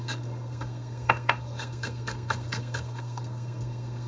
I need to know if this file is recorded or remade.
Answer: remade